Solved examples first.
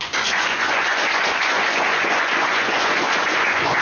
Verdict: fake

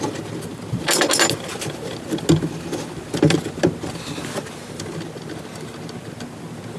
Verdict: real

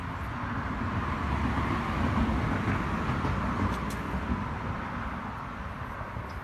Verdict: real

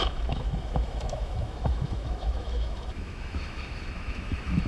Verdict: fake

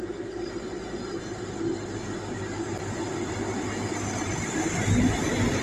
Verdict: real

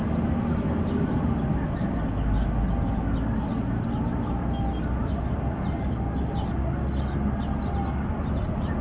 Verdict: real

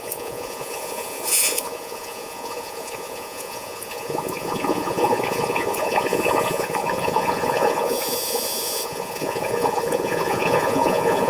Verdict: fake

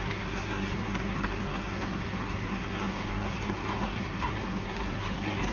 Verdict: fake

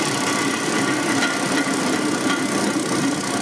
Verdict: real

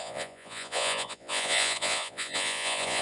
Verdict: fake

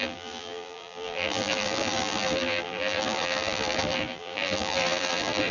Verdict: fake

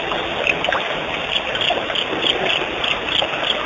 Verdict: real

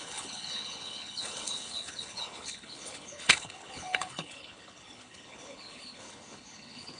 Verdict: fake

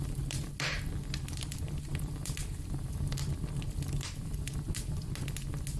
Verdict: real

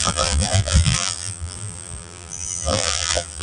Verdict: fake